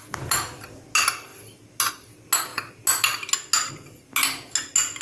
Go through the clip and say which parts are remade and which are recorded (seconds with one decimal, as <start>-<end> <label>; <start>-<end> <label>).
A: 0.0-5.0 recorded